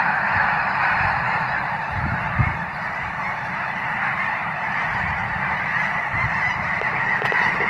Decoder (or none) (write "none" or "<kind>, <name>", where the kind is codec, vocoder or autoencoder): vocoder, BigVGAN v2